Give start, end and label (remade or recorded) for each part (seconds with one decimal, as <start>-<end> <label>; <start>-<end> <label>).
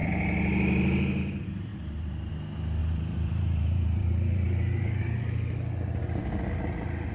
0.0-1.7 recorded; 1.7-2.3 remade; 2.3-2.8 recorded; 2.8-5.0 remade; 5.0-7.1 recorded